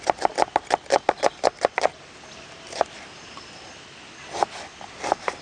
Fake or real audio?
real